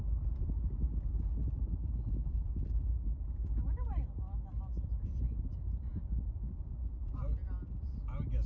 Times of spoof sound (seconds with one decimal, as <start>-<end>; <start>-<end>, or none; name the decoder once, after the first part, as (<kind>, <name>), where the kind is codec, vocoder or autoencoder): none